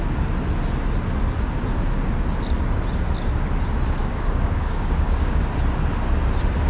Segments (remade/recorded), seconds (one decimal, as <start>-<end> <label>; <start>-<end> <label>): 0.0-4.0 recorded; 4.0-5.4 remade; 5.4-6.7 recorded